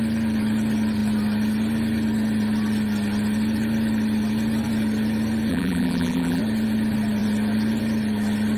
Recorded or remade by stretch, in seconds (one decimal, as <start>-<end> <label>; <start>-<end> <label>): 0.0-5.5 recorded; 5.5-6.4 remade; 6.4-8.6 recorded